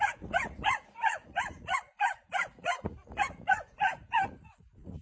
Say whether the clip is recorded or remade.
remade